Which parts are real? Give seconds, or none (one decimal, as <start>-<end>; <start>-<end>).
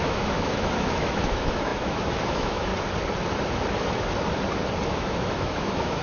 2.7-4.9